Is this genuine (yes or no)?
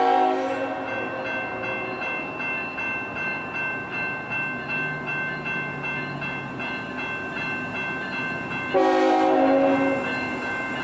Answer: yes